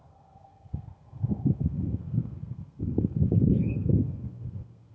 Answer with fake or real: fake